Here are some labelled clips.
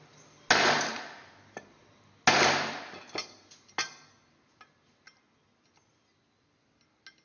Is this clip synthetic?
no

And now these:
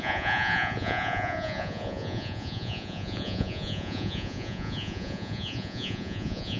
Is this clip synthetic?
yes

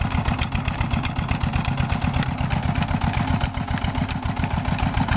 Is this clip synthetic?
no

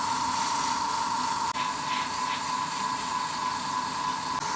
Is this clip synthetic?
no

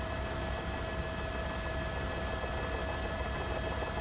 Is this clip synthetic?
no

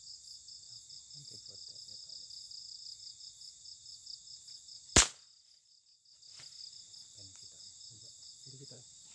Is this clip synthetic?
no